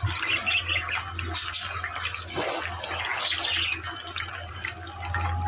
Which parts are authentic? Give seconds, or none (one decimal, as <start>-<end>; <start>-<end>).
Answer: 0.0-5.5